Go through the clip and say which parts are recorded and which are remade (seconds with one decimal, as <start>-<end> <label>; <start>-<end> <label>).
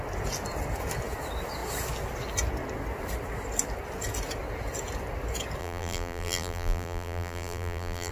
0.0-5.6 recorded; 5.6-8.1 remade